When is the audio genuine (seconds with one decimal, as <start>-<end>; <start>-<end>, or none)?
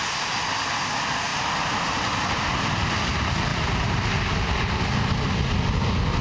0.0-1.3; 2.5-3.5; 4.1-6.2